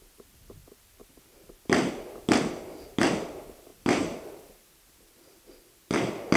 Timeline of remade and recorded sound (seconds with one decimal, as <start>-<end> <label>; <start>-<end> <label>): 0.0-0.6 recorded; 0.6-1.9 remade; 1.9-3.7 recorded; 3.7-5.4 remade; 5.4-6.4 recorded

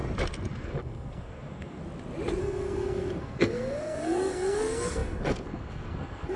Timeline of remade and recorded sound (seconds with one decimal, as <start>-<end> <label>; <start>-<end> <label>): 0.0-0.5 recorded; 0.5-1.8 remade; 1.8-2.4 recorded; 2.4-6.4 remade

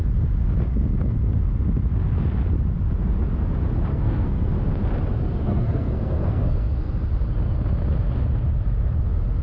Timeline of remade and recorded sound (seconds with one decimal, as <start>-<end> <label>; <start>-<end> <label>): 0.0-3.9 recorded; 3.9-4.5 remade; 4.5-5.4 recorded; 5.4-7.1 remade; 7.1-9.4 recorded

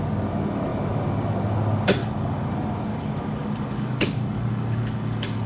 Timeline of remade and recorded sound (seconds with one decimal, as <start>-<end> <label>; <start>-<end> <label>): 0.0-2.0 recorded; 2.0-2.5 remade; 2.5-2.9 recorded; 2.9-5.5 remade